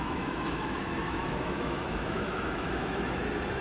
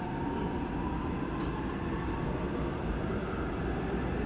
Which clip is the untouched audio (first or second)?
second